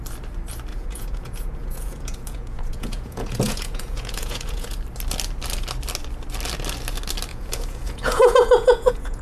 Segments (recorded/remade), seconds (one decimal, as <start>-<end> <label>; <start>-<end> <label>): 0.0-0.7 recorded; 0.7-4.7 remade; 4.7-7.3 recorded; 7.3-9.2 remade